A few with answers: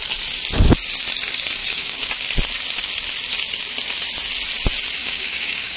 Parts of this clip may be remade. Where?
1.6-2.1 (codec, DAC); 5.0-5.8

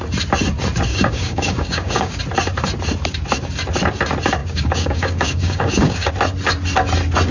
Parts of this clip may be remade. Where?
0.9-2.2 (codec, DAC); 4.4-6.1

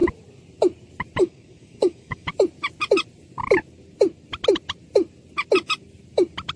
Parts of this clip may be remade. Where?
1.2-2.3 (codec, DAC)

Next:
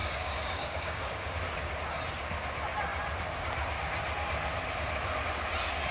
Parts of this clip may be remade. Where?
0.0-1.4 (codec, DAC)

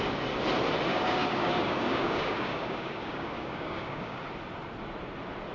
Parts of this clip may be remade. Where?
0.9-4.2 (codec, DAC)

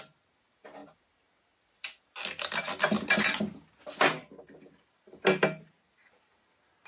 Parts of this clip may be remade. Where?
none

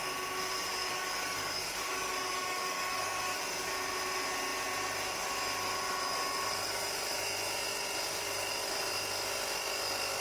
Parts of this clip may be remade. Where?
0.7-3.4 (codec, DAC)

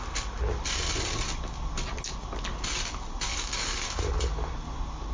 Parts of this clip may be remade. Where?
3.3-4.0 (codec, DAC)